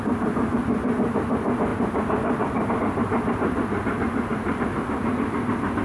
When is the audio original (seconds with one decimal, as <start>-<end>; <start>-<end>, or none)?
0.0-5.8